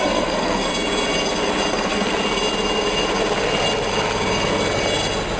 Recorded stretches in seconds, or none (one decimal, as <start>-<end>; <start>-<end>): 0.7-1.7; 2.1-5.4